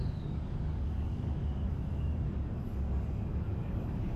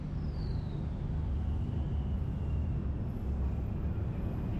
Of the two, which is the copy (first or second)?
first